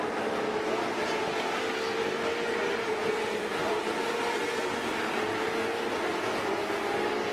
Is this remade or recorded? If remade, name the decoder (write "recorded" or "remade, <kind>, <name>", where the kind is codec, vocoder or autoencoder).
recorded